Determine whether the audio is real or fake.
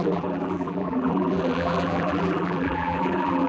fake